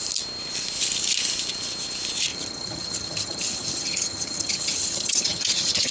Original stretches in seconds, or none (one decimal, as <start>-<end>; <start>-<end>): 0.0-2.3